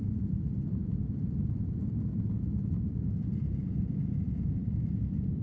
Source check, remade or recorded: remade